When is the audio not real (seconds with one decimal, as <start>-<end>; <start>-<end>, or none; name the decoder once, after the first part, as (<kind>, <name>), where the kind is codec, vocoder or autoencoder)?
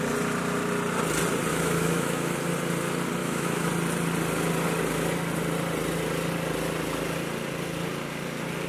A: 1.5-2.4 (autoencoder, DAC-VAE); 3.2-3.7